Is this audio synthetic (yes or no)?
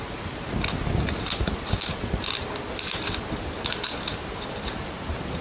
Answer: no